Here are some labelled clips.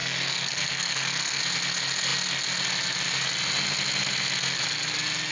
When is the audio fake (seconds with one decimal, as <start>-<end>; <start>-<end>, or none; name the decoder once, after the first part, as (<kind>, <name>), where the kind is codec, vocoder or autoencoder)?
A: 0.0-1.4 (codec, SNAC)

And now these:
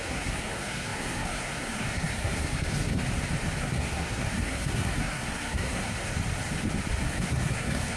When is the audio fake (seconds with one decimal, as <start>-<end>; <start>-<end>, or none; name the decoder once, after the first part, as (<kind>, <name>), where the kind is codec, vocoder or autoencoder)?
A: 0.0-3.0 (codec, SNAC); 3.6-6.1; 7.0-8.0

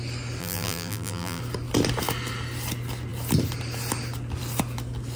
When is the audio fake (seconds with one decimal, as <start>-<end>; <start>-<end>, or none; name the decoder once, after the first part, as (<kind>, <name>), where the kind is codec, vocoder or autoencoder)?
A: 0.4-1.4 (vocoder, BigVGAN v2)